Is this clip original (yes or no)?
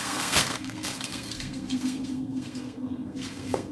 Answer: no